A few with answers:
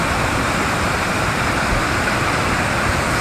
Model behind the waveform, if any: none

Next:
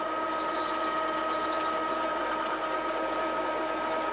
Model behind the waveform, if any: none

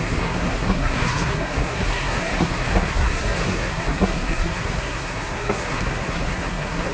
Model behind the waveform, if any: codec, SNAC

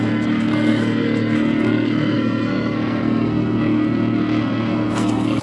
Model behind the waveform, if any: codec, SNAC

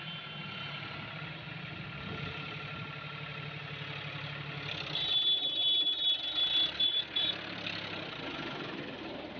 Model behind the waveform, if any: none